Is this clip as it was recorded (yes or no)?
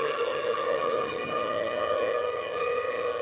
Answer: no